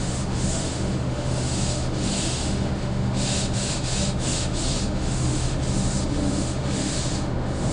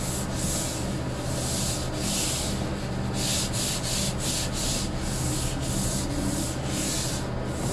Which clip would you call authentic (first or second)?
second